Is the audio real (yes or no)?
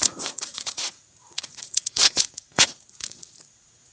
no